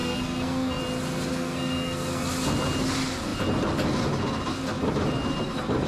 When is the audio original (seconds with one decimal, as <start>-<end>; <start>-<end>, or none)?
0.8-1.3; 2.2-5.9